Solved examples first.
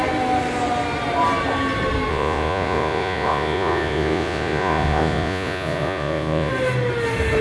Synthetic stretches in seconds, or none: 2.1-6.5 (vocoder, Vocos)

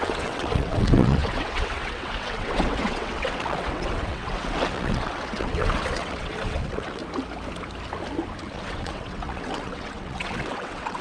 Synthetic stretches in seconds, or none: 0.0-7.0 (vocoder, WaveNeXt); 8.4-11.0

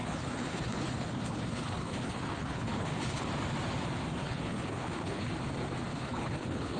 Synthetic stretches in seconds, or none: 0.0-3.3 (codec, HILCodec); 4.2-5.3; 5.9-6.8

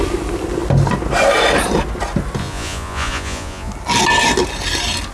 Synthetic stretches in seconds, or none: 2.4-3.7 (vocoder, Vocos)

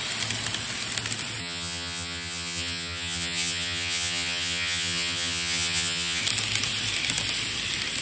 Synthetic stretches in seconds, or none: 1.4-6.2 (vocoder, HiFi-GAN)